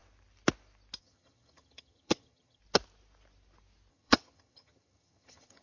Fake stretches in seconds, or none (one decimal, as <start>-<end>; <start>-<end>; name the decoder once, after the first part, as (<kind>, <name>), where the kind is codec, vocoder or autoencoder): 1.0-2.6 (vocoder, HiFi-GAN); 3.9-5.6